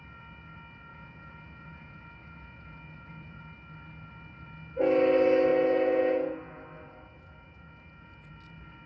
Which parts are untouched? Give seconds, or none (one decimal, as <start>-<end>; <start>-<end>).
0.0-0.9; 3.4-5.5; 8.3-8.9